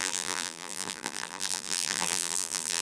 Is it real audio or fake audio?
fake